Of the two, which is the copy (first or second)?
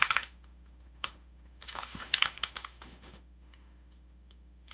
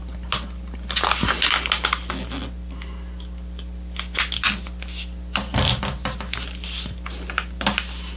first